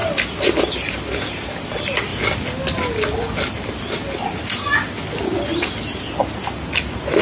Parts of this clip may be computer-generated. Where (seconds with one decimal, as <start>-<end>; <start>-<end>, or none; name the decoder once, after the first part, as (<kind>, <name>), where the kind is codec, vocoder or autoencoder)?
none